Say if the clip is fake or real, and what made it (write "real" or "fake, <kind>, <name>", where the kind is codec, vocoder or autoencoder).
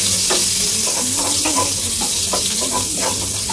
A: real